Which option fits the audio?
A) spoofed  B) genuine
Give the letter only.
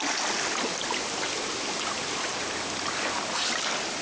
B